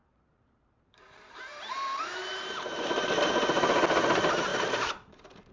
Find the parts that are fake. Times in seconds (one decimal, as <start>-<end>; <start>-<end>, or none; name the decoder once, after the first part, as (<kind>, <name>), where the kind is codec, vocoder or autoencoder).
0.0-3.3 (vocoder, BigVGAN v2); 4.5-5.5